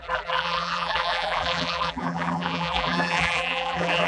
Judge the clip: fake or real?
fake